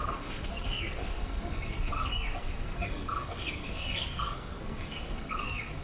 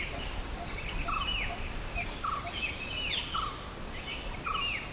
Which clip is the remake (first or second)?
first